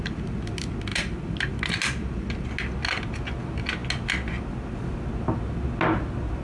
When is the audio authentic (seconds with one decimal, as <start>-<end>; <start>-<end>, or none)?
0.0-6.4

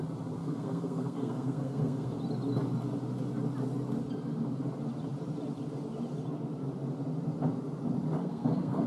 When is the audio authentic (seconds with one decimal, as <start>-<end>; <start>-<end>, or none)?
0.0-0.4; 2.2-8.2